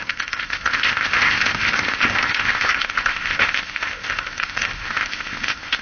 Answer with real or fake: fake